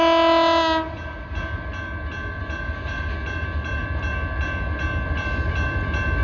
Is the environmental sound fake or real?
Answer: real